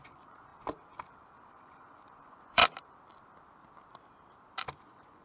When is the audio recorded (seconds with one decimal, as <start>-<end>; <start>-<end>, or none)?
0.5-1.5; 2.6-4.8

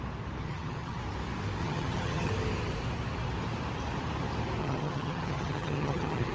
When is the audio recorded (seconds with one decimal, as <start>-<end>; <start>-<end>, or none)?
0.0-0.4; 1.0-1.6; 2.3-4.6